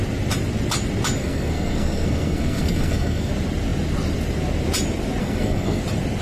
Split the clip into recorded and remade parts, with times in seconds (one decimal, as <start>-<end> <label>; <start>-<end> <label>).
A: 0.0-1.2 recorded; 1.2-3.3 remade; 3.3-5.2 recorded; 5.2-5.8 remade; 5.8-6.2 recorded